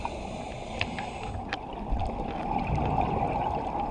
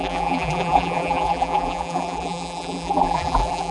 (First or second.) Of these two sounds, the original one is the first